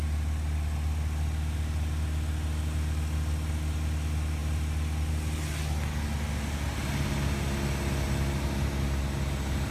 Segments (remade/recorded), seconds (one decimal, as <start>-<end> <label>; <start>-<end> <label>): 0.0-9.7 recorded